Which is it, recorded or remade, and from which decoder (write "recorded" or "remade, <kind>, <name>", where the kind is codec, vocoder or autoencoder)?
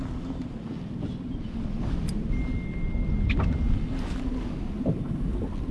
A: recorded